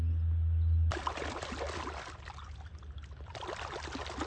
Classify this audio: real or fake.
real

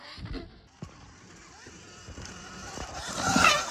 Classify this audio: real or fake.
real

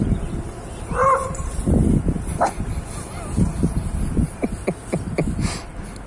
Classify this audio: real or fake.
real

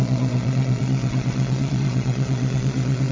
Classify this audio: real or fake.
fake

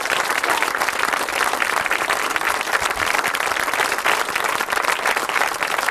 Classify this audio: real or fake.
real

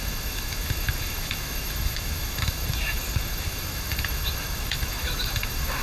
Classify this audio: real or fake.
fake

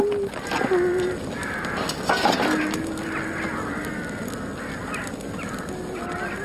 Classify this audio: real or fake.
real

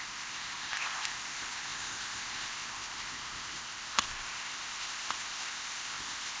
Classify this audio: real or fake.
fake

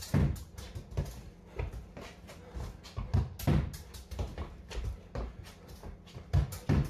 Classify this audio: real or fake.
real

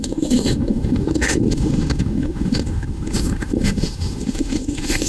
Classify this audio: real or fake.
fake